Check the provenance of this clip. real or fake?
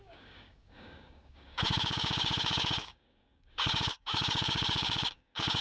fake